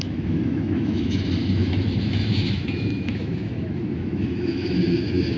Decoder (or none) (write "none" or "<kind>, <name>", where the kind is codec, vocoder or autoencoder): autoencoder, DAC-VAE